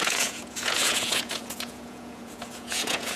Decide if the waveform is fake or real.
fake